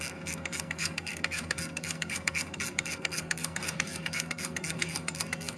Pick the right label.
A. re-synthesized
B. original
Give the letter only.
A